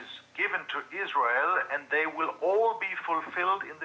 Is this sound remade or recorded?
recorded